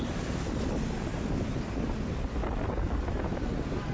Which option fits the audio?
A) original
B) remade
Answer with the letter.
A